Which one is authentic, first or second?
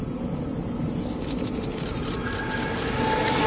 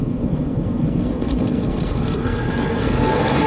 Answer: first